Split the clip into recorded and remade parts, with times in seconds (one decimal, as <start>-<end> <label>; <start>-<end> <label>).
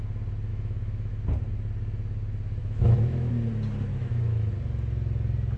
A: 0.0-0.5 recorded; 0.5-1.1 remade; 1.1-2.6 recorded; 2.6-3.3 remade; 3.3-3.9 recorded; 3.9-4.5 remade; 4.5-5.6 recorded